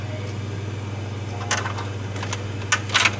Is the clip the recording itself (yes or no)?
yes